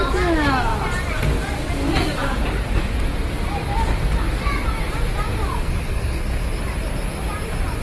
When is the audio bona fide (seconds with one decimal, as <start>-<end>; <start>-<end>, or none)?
0.0-5.5; 6.5-7.8